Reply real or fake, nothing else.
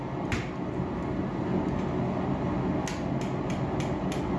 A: real